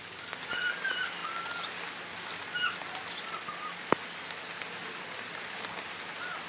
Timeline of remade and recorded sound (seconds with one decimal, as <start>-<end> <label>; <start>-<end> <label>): 0.0-6.5 recorded